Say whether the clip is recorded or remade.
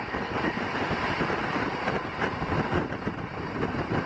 recorded